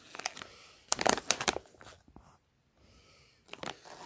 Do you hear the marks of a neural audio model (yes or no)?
no